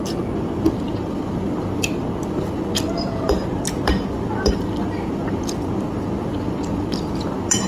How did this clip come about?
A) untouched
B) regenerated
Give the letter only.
A